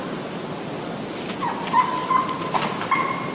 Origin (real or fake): real